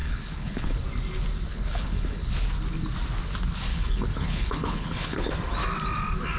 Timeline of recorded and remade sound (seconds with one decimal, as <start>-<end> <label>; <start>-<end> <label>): 0.0-0.8 remade; 0.8-1.5 recorded; 1.5-2.3 remade; 2.3-3.7 recorded; 3.7-5.3 remade; 5.3-6.4 recorded